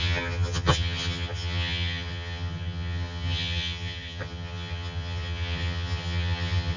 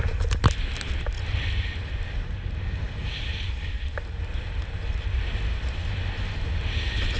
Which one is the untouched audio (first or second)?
second